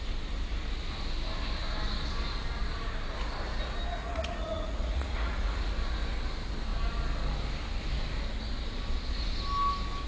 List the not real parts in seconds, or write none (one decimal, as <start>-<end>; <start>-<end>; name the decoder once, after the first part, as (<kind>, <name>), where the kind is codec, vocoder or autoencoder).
3.9-5.7 (vocoder, Vocos)